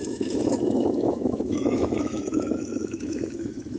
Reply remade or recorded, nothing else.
remade